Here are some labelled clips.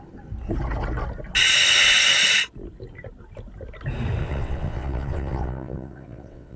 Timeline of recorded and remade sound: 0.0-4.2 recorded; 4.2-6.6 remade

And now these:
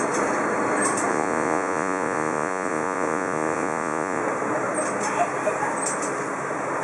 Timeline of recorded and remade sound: 0.0-1.1 recorded; 1.1-4.2 remade; 4.2-6.8 recorded

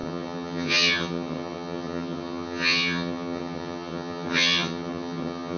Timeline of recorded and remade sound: 0.0-5.6 remade

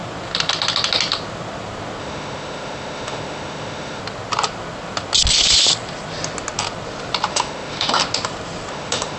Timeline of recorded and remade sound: 0.0-2.0 recorded; 2.0-4.0 remade; 4.0-7.3 recorded; 7.3-8.0 remade; 8.0-8.7 recorded; 8.7-9.2 remade